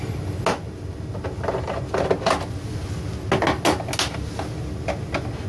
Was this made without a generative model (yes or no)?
yes